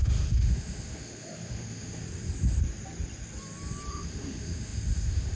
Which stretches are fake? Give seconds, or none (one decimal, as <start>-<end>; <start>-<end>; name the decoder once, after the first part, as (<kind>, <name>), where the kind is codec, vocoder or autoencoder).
0.0-2.0 (autoencoder, DAC-VAE); 3.9-5.4